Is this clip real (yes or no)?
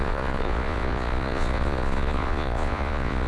no